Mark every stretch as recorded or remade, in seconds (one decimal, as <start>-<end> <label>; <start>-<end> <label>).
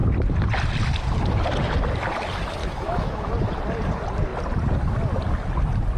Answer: 0.0-2.6 recorded; 2.6-3.3 remade; 3.3-6.0 recorded